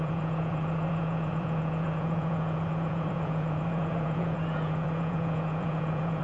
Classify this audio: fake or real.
fake